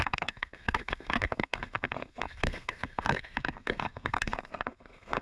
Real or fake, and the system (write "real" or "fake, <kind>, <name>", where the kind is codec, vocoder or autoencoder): fake, codec, SNAC